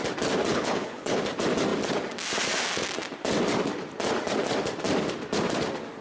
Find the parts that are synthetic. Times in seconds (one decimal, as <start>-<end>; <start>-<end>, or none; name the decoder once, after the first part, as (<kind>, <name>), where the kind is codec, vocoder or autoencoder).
0.5-1.2 (codec, HILCodec)